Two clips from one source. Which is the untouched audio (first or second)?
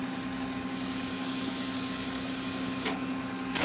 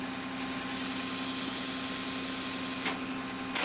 second